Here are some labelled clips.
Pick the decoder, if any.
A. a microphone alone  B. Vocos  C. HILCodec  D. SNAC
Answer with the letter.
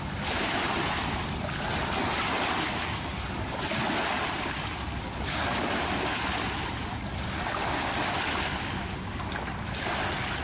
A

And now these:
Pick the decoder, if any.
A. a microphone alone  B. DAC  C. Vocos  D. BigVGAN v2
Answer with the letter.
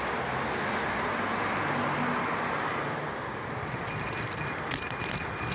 A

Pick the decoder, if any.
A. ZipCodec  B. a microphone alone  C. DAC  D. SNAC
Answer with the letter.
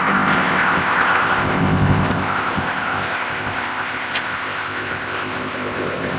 A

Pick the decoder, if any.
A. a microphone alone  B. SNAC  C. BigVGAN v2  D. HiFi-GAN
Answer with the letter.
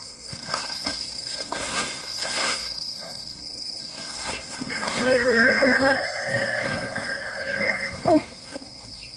B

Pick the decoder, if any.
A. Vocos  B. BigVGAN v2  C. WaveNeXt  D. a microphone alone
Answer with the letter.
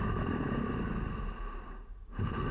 D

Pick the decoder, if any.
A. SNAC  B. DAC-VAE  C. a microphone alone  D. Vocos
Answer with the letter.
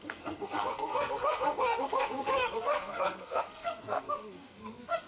A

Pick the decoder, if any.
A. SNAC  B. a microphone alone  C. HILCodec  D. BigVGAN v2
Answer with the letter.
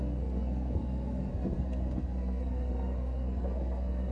A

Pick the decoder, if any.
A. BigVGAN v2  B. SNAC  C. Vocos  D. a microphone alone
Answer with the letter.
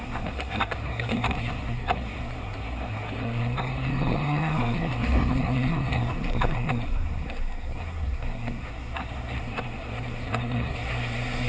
B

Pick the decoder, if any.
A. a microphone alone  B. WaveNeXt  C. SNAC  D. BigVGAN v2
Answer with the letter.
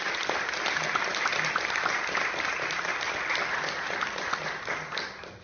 A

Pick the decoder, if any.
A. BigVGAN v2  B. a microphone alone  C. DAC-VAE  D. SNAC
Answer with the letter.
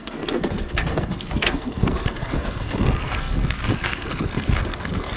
D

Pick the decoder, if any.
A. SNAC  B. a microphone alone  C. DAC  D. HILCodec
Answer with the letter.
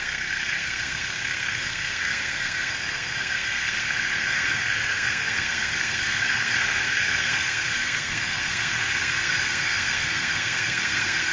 A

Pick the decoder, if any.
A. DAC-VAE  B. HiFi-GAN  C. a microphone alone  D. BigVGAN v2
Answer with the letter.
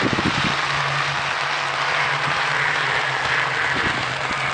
C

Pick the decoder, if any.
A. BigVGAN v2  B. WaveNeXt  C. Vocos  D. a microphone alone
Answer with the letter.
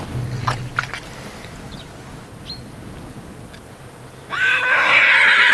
D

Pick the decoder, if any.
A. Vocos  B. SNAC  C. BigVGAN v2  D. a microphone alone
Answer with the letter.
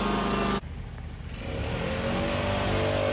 D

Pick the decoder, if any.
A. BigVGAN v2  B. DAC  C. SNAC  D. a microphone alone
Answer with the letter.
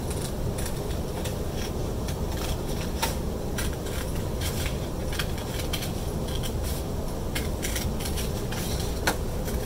D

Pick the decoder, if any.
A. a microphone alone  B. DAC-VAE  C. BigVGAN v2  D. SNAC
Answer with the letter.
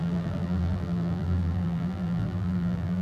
C